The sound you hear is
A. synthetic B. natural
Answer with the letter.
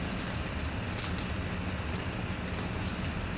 B